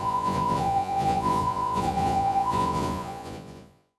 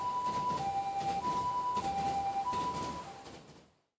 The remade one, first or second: first